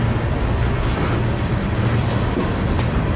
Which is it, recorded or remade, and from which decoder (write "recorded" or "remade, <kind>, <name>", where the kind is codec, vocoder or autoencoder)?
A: recorded